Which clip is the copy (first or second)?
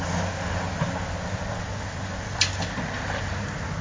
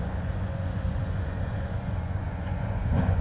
second